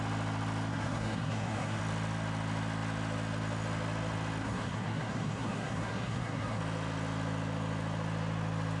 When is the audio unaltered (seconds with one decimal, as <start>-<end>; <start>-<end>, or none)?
0.0-0.7; 1.8-4.4; 6.6-8.8